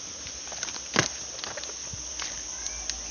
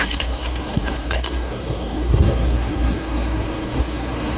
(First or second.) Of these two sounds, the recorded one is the first